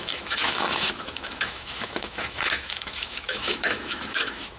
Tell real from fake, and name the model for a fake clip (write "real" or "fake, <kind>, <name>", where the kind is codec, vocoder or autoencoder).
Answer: fake, autoencoder, DAC-VAE